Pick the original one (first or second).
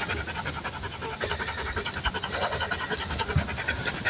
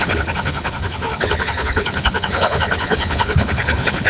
first